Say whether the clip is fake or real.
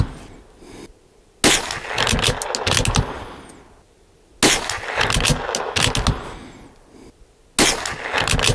real